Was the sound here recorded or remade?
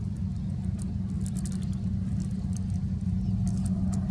recorded